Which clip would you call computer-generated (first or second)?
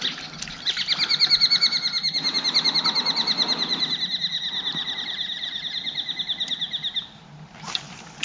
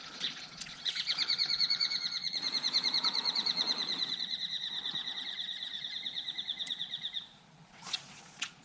second